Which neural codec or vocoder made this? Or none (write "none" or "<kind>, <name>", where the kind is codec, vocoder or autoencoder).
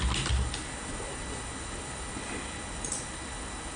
none